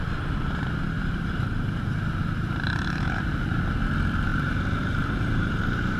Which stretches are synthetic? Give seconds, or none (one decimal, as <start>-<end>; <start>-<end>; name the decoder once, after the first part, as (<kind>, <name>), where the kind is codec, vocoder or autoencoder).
1.0-3.6 (vocoder, BigVGAN v2); 4.3-5.6